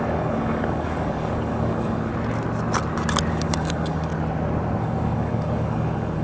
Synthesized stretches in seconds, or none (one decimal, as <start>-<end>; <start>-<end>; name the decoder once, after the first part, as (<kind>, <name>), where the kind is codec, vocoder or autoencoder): 0.0-2.1 (codec, DAC); 3.3-4.1; 4.8-6.2